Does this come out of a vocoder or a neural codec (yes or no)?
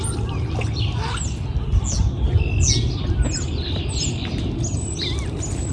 no